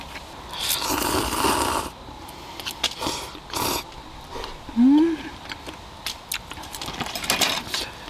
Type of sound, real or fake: real